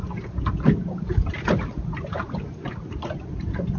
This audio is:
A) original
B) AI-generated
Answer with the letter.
A